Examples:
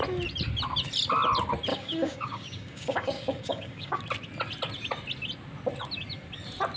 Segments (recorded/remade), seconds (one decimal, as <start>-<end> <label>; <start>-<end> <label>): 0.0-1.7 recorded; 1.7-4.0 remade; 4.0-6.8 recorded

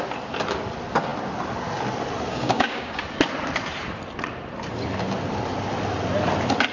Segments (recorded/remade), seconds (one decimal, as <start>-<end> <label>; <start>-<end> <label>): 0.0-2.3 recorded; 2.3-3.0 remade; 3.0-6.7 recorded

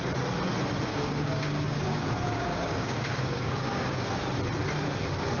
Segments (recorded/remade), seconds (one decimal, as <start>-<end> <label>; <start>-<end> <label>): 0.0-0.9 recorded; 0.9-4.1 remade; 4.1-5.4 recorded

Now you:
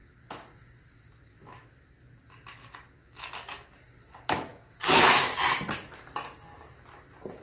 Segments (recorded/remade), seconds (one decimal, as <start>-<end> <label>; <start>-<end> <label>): 0.0-4.5 recorded; 4.5-5.1 remade; 5.1-7.4 recorded